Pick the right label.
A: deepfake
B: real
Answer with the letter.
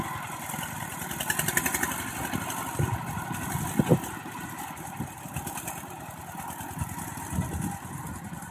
B